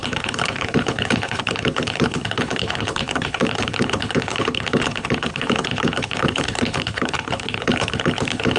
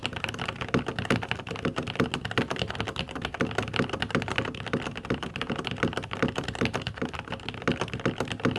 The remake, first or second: first